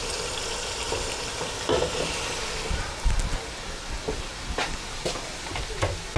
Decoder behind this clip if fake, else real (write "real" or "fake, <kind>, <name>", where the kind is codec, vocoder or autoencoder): real